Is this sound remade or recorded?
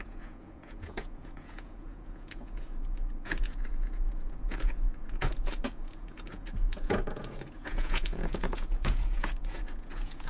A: remade